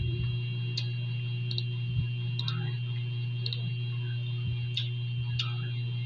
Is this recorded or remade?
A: recorded